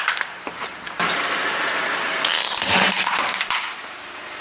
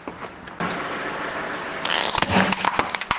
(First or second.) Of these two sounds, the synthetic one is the first